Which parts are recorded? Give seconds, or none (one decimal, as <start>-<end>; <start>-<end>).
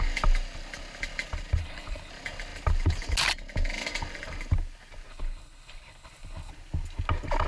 0.0-1.6; 2.1-5.1; 6.5-7.5